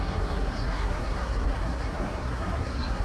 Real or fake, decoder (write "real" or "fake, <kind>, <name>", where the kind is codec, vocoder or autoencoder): fake, codec, SNAC